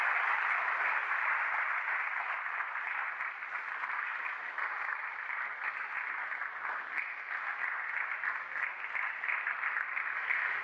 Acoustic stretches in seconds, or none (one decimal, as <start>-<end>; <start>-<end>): 0.0-10.6